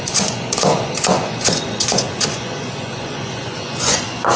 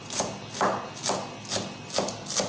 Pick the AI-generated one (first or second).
first